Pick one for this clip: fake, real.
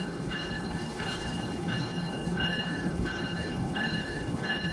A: fake